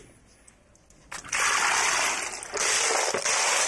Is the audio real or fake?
real